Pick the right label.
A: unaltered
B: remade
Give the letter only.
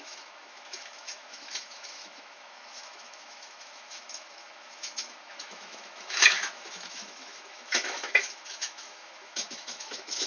B